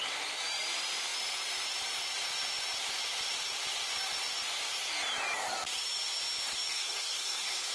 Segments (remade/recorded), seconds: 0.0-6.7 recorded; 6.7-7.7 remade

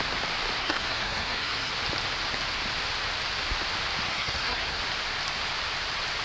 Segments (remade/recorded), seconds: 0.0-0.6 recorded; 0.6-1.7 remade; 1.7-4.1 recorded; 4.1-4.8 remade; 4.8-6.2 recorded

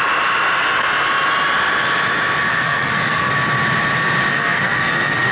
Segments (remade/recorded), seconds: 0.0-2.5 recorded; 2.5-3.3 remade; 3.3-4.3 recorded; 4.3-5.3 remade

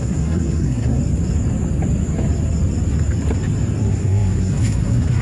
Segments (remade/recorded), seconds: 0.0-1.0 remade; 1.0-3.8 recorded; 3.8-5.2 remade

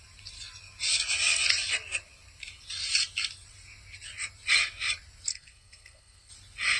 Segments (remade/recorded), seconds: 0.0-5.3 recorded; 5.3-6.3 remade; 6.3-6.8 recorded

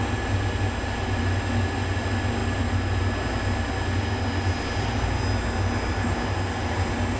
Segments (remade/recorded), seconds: 0.0-7.2 recorded

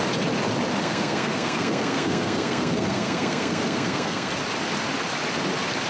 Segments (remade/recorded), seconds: 0.0-0.8 recorded; 0.8-4.3 remade; 4.3-5.9 recorded

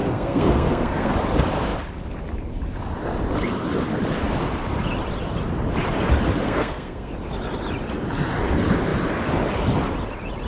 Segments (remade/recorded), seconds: 0.0-1.1 remade; 1.1-6.4 recorded; 6.4-7.1 remade; 7.1-10.5 recorded